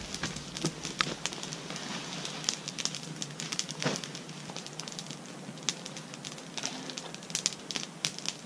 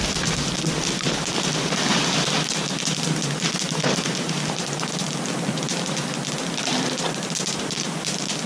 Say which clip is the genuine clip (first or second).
first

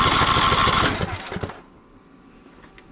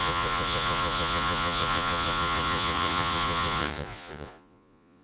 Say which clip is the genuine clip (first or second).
first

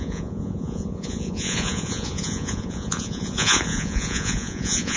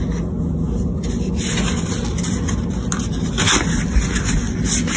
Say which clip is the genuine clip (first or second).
second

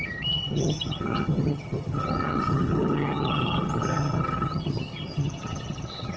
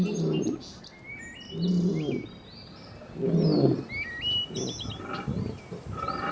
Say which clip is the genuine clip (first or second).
second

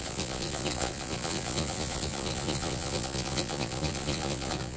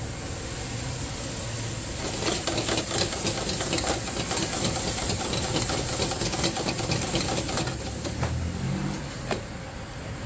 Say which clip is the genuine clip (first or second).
second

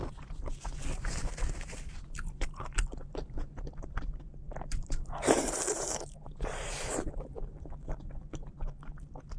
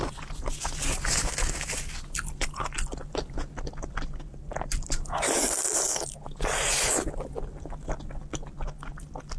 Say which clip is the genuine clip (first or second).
second